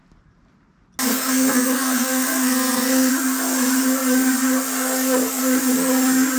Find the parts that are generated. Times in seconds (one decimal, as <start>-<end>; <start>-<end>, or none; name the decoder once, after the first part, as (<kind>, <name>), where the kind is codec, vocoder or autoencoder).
1.1-3.1 (codec, SNAC)